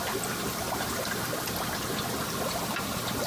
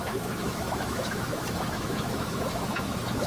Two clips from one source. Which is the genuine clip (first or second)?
first